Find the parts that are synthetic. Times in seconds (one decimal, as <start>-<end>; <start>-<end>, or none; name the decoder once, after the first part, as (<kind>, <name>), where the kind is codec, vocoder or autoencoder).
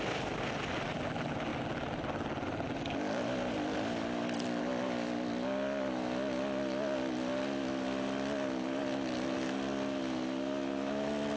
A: none